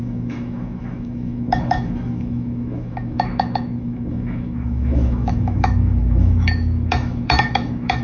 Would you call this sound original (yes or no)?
no